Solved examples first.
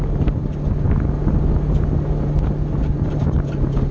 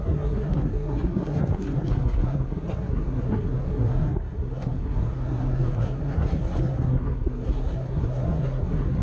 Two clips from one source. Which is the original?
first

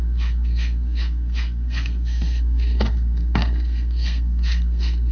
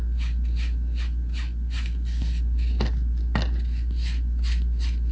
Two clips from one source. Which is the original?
second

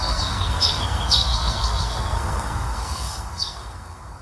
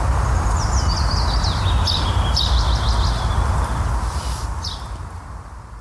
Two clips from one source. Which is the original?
second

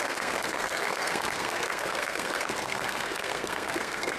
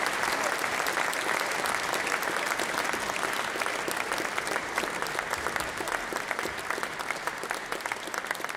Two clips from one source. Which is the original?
second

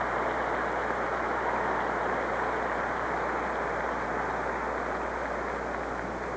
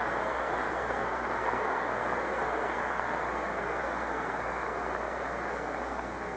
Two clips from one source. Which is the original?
first